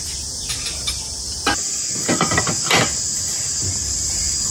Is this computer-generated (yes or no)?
no